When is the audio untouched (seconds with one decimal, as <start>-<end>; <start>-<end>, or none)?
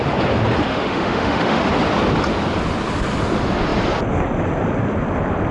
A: 0.0-0.7; 1.7-5.5